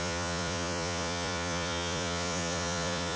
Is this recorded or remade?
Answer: remade